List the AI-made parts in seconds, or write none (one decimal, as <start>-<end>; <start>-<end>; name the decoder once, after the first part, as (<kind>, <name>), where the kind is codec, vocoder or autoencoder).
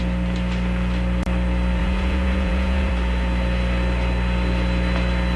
1.8-2.9 (vocoder, Vocos)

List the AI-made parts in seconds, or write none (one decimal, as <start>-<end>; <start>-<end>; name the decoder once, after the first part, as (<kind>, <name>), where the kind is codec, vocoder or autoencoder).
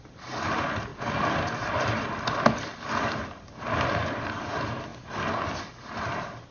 0.0-0.9 (vocoder, BigVGAN v2); 1.4-4.9; 5.6-6.5